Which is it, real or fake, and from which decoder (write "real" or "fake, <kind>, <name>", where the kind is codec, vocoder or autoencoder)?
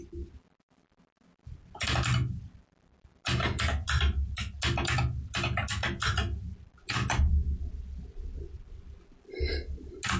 real